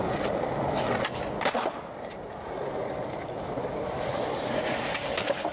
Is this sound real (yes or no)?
yes